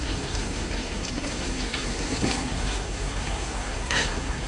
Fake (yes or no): yes